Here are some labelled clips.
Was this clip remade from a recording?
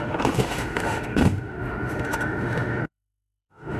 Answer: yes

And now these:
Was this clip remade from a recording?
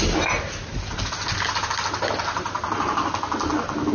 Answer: no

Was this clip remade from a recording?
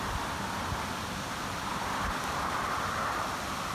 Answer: no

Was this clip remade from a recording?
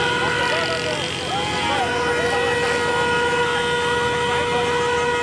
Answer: no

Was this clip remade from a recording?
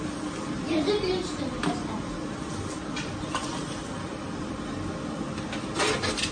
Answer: no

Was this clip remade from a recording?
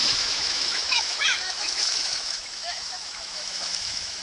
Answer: yes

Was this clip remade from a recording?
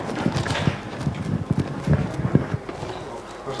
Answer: no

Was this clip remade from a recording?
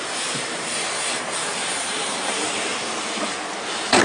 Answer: yes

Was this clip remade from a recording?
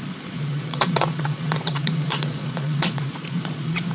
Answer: yes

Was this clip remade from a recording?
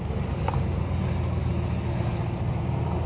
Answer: no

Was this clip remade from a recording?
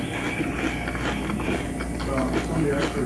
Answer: no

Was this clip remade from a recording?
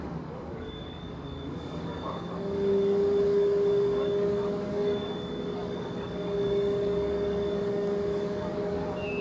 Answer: yes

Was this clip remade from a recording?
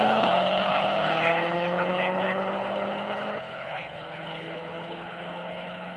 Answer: yes